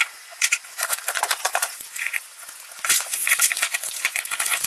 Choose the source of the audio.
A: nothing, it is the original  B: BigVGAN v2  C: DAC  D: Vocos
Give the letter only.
D